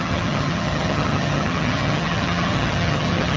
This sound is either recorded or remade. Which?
remade